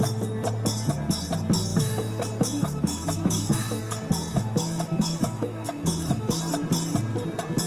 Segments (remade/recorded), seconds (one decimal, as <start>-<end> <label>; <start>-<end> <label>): 0.0-1.7 recorded; 1.7-3.8 remade; 3.8-4.3 recorded; 4.3-6.4 remade; 6.4-7.7 recorded